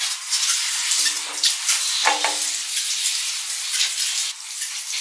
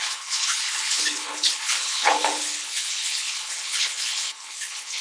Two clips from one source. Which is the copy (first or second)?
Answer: second